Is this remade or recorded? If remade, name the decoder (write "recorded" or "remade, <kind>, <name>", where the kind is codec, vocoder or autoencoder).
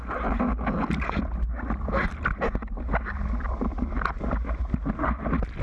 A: recorded